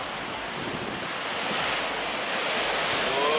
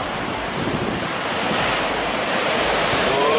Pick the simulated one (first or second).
second